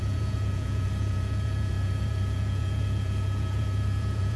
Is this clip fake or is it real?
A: fake